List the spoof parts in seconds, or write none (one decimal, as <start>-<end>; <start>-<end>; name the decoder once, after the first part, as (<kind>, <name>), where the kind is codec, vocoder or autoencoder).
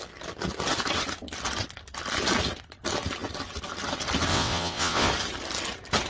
4.3-5.1 (vocoder, WaveNeXt)